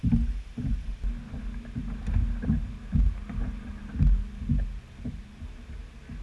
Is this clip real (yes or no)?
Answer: yes